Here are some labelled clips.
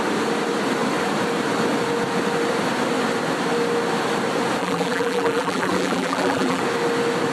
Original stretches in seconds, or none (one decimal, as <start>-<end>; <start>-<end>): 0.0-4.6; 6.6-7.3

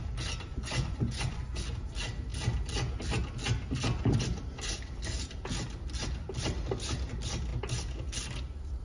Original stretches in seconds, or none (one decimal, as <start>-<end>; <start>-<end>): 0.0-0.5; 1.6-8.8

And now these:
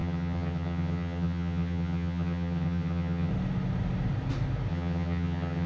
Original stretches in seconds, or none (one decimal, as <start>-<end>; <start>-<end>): 3.3-4.7

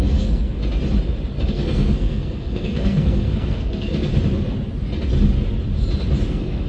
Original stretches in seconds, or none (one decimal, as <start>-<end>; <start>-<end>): 0.6-1.5; 4.1-6.3